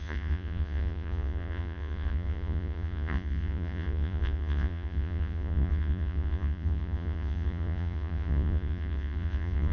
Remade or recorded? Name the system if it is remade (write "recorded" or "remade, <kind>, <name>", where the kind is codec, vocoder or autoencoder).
remade, vocoder, Vocos